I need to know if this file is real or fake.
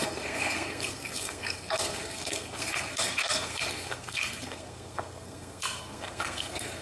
fake